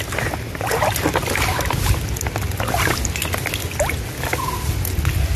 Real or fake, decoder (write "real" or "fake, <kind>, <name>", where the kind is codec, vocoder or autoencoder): real